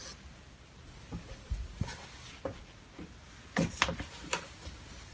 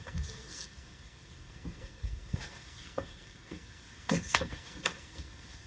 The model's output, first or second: second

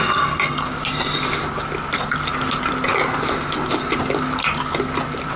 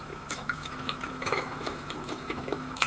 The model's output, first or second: second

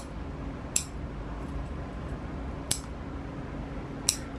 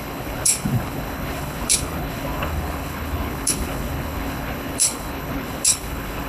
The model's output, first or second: second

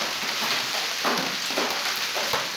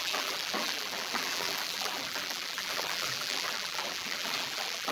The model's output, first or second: second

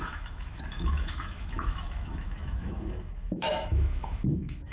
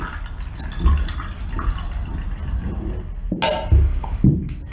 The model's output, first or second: first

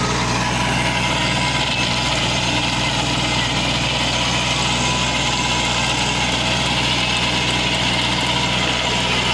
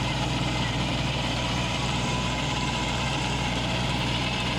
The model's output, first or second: second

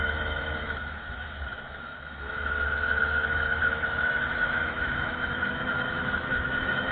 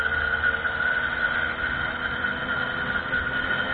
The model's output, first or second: first